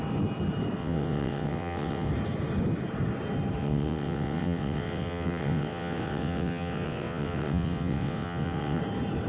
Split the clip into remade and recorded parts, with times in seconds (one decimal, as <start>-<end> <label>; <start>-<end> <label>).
0.0-0.8 recorded; 0.8-2.1 remade; 2.1-3.6 recorded; 3.6-8.8 remade; 8.8-9.3 recorded

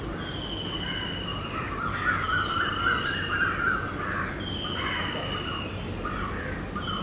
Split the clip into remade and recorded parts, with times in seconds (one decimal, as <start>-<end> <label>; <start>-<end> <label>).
0.0-7.0 recorded